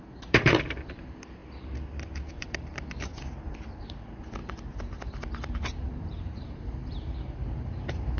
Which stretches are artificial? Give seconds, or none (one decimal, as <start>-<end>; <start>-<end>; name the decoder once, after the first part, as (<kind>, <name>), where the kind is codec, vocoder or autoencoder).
0.0-1.4 (vocoder, BigVGAN v2); 2.3-3.1; 3.8-8.2